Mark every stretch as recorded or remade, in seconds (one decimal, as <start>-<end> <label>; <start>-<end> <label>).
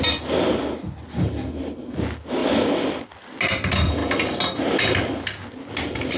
0.0-6.2 recorded